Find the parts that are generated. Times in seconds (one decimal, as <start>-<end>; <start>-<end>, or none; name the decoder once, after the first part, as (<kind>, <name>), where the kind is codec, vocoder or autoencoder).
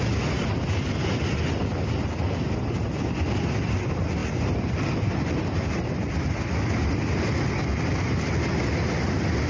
4.2-6.0 (vocoder, BigVGAN v2)